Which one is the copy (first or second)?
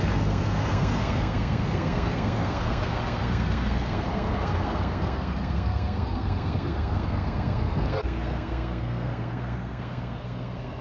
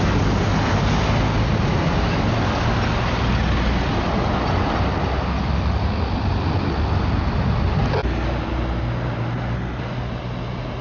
first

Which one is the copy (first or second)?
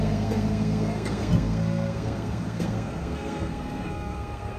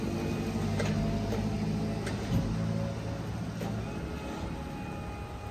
first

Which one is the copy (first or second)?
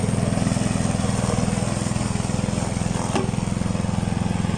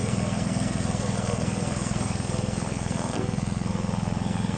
second